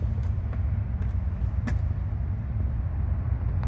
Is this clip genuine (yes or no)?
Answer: yes